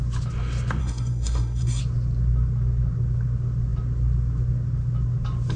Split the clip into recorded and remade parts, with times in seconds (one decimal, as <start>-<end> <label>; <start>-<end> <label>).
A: 0.0-0.8 recorded; 0.8-1.8 remade; 1.8-5.6 recorded